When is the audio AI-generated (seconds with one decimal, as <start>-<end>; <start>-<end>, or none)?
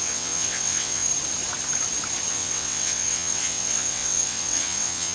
0.0-1.1; 2.3-5.1